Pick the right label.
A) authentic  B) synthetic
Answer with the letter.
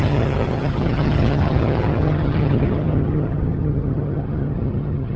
B